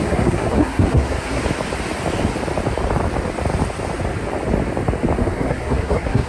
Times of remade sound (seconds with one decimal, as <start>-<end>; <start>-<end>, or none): 0.0-1.4; 5.2-6.3